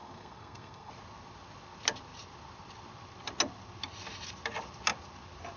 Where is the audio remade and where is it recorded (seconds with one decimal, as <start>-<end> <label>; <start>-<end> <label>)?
0.0-0.9 remade; 0.9-5.6 recorded